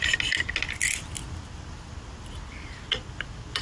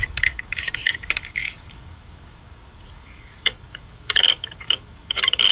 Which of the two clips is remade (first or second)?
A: second